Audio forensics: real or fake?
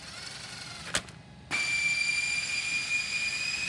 real